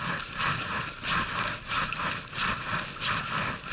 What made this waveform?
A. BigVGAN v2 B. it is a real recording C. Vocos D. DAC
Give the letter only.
B